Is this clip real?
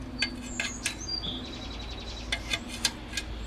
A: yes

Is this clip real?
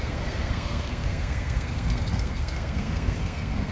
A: no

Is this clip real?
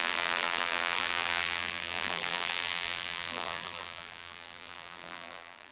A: no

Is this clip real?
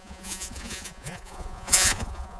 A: no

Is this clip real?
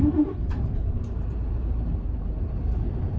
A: no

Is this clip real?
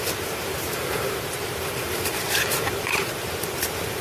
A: no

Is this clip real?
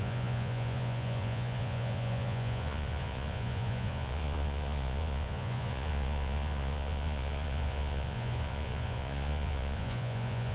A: no